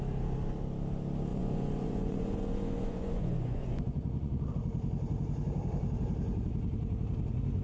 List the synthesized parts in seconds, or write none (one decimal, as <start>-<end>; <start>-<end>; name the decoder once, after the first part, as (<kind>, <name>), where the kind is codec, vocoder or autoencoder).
1.3-4.5 (vocoder, Vocos)